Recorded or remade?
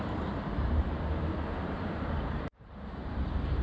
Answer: remade